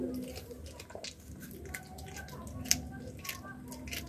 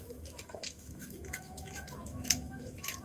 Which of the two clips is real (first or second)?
first